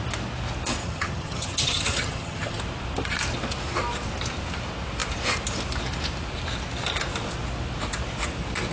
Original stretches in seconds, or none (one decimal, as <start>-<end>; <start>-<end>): 0.0-0.8; 2.6-8.7